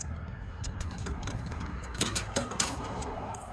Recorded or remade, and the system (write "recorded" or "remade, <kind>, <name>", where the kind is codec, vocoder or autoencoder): remade, codec, SNAC